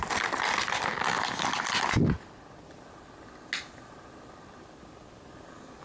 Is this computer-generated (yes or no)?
no